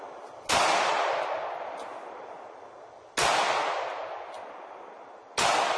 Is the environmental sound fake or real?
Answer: real